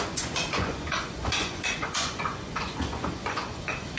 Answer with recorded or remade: remade